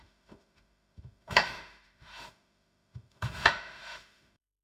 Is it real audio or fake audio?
fake